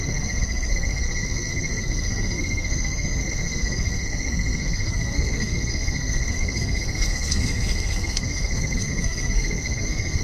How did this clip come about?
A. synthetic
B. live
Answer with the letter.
A